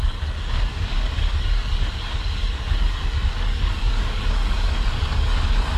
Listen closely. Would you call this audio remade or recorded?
remade